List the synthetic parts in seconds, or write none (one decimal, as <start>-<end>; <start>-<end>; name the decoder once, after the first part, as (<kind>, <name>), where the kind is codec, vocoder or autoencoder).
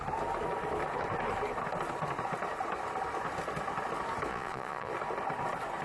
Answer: 4.3-4.9 (vocoder, Vocos)